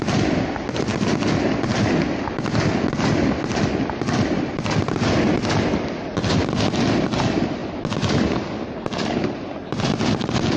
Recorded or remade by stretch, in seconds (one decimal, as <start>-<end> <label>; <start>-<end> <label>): 0.0-10.6 recorded